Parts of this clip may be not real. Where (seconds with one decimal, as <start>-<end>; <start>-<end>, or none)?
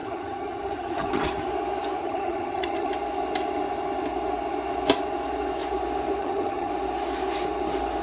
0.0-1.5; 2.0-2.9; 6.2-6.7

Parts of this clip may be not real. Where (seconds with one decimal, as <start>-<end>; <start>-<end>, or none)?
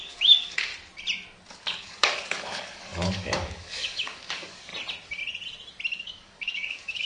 0.0-0.7; 1.5-4.7; 6.0-7.1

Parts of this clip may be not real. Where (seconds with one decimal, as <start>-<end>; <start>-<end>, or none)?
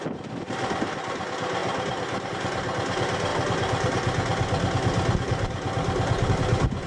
none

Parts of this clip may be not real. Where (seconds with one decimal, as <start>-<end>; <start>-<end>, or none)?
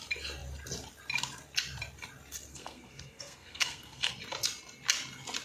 2.5-4.1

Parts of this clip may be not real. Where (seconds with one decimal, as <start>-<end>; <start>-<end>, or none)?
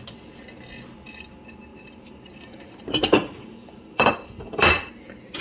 1.7-4.9